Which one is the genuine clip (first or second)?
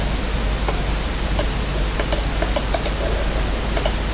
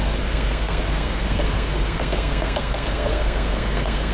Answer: first